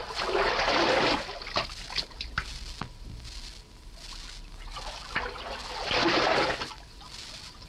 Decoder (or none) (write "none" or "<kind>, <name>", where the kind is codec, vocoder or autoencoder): none